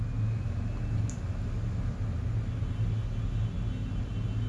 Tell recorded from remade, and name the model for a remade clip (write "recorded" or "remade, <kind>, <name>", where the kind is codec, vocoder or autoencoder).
recorded